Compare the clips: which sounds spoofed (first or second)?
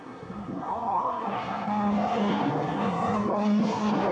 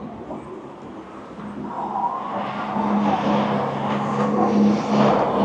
first